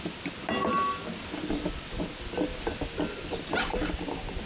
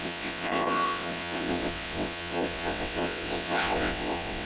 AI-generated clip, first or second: second